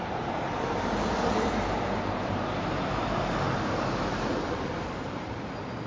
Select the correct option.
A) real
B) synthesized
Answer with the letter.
B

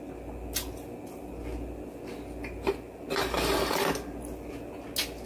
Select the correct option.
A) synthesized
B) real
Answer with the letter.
B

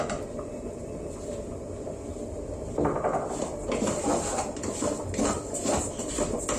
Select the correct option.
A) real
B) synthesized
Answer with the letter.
B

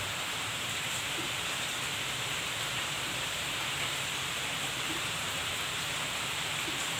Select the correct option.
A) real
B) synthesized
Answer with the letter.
B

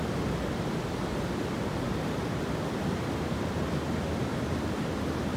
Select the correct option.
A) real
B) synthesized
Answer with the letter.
A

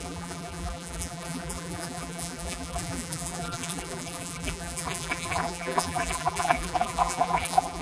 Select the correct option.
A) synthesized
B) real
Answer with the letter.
A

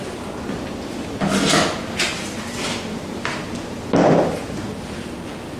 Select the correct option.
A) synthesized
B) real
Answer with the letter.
B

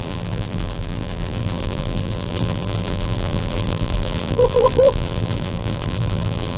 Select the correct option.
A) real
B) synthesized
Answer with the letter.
B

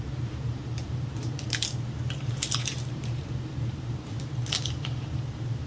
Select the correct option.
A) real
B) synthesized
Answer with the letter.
B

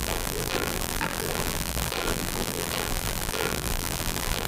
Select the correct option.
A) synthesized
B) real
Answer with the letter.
A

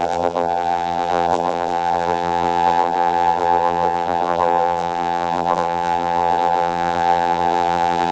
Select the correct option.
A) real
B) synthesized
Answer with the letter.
B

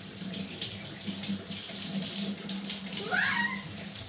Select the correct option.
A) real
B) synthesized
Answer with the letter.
B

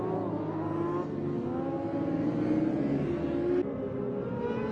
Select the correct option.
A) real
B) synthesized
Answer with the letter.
A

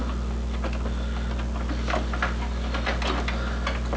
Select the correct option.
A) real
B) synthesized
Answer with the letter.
A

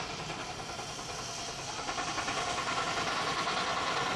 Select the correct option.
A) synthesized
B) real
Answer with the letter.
B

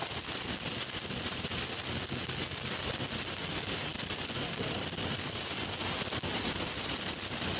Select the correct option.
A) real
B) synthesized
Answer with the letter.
A